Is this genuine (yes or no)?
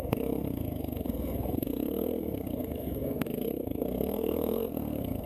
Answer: no